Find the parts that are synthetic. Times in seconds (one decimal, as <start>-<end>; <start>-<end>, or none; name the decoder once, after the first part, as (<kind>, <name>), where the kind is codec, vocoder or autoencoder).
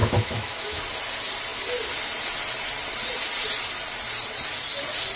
0.0-0.8 (autoencoder, DAC-VAE)